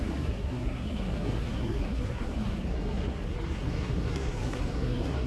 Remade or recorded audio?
remade